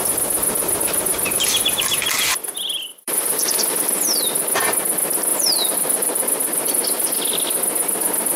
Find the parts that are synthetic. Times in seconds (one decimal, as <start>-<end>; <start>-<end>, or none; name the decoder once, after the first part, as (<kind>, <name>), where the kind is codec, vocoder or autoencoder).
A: 2.9-4.2 (vocoder, BigVGAN v2); 5.3-6.7